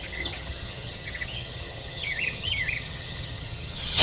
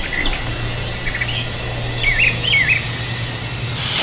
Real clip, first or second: second